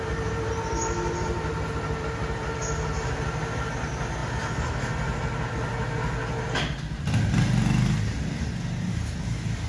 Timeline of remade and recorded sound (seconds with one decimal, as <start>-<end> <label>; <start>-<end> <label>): 0.0-9.7 recorded